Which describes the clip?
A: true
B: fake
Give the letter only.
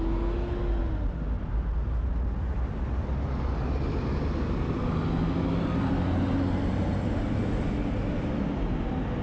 A